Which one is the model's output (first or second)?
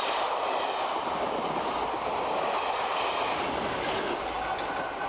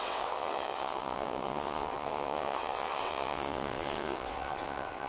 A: second